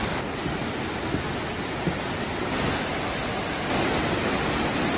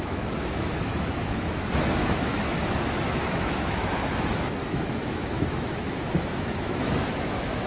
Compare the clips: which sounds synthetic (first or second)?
second